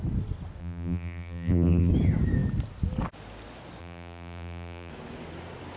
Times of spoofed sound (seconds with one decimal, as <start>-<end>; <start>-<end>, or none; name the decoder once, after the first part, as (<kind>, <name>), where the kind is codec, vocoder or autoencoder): 0.6-1.9 (vocoder, BigVGAN v2); 3.8-4.9